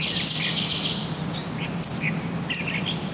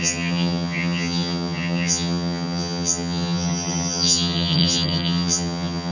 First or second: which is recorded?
first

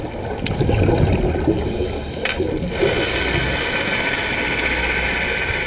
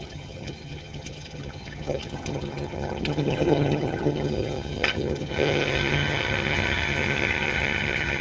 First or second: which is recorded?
first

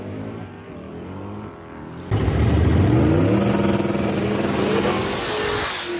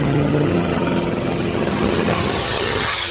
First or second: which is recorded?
first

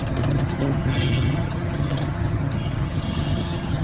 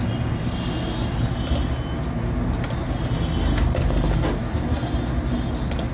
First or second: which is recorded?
second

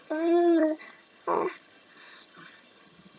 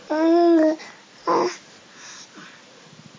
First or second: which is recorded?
second